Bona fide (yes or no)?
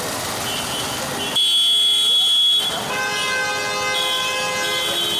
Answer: yes